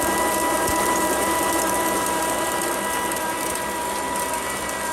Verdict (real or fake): real